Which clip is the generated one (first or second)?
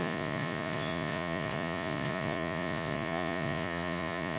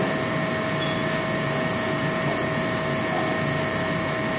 first